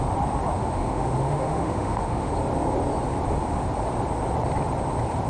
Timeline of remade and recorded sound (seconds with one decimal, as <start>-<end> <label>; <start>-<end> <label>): 0.0-0.6 recorded; 0.6-2.3 remade; 2.3-5.3 recorded